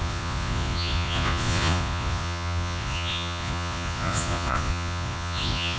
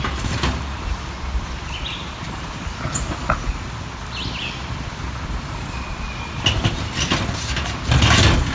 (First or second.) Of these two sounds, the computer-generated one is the first